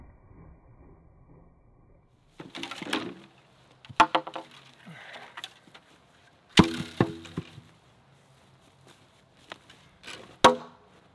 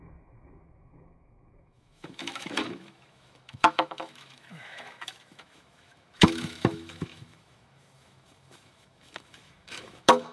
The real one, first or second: first